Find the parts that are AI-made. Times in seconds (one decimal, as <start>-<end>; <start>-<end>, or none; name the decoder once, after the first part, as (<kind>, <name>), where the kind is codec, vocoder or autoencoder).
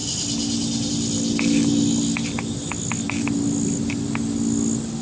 none